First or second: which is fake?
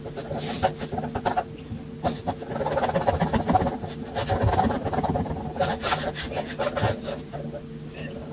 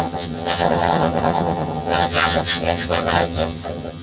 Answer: second